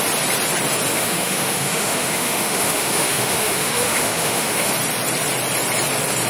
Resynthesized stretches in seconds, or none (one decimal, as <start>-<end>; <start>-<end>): 0.9-4.7